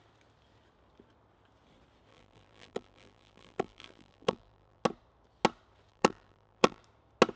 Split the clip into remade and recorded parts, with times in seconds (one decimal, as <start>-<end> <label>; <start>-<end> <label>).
0.0-2.1 recorded; 2.1-4.8 remade; 4.8-5.9 recorded; 5.9-6.8 remade; 6.8-7.4 recorded